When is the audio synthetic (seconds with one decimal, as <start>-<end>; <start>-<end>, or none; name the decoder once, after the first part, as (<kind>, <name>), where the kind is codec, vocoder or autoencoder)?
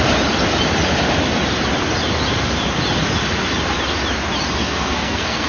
4.6-5.5 (codec, SNAC)